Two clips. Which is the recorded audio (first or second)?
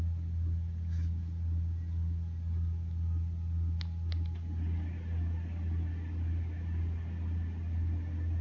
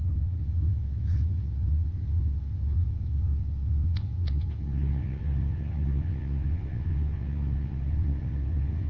first